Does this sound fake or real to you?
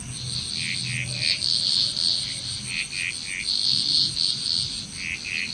real